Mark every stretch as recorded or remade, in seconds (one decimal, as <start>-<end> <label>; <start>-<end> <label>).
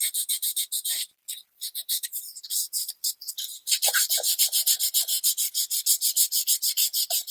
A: 0.0-5.1 remade; 5.1-6.6 recorded; 6.6-7.3 remade